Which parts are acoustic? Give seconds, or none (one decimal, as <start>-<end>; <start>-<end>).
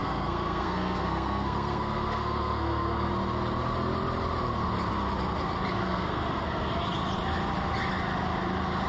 3.1-5.8; 6.7-8.9